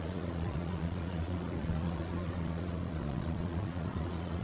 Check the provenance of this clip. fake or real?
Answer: fake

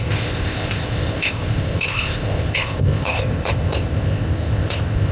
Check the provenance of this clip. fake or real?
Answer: fake